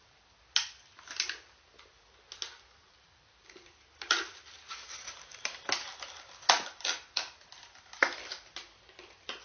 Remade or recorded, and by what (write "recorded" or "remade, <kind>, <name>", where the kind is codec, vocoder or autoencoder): recorded